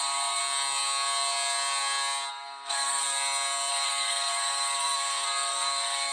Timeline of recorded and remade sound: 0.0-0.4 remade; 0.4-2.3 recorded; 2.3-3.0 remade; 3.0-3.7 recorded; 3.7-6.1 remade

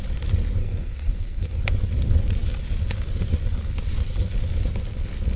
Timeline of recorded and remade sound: 0.0-0.6 recorded; 0.6-1.6 remade; 1.6-5.4 recorded

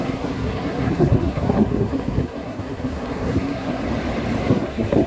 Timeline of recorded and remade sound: 0.0-3.8 remade; 3.8-4.4 recorded; 4.4-5.1 remade

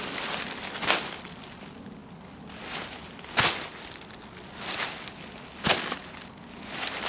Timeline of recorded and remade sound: 0.0-7.1 recorded

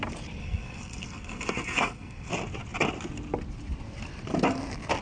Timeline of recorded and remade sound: 0.0-0.4 recorded; 0.4-2.3 remade; 2.3-5.0 recorded